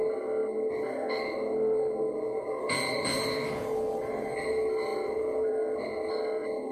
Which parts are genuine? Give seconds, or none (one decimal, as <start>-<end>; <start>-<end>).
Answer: 0.0-6.7